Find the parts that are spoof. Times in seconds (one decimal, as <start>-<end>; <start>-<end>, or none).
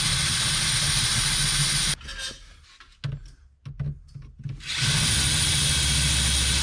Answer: none